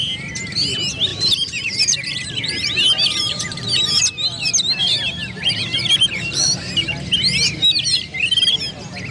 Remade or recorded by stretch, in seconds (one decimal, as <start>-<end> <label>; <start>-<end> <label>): 0.0-1.1 recorded; 1.1-4.0 remade; 4.0-5.2 recorded; 5.2-6.5 remade; 6.5-9.1 recorded